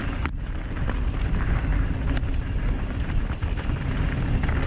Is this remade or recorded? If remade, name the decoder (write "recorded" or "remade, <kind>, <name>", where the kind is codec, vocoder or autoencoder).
recorded